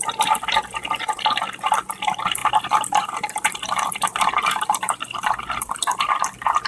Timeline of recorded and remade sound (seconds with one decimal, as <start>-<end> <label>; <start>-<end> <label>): 0.0-2.4 recorded; 2.4-6.0 remade; 6.0-6.7 recorded